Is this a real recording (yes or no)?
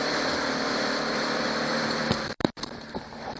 no